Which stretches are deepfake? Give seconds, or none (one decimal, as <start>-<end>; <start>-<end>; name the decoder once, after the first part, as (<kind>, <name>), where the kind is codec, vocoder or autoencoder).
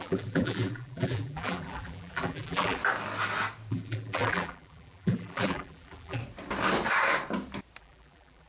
0.0-2.8 (vocoder, BigVGAN v2); 3.7-6.2; 7.8-8.5